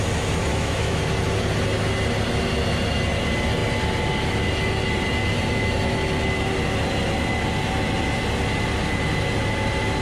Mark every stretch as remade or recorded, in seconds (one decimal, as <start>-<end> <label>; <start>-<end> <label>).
0.0-0.5 recorded; 0.5-1.0 remade; 1.0-10.0 recorded